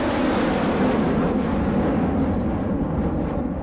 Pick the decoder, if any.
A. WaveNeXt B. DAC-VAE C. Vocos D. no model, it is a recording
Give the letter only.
D